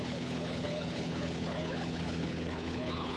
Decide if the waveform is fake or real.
fake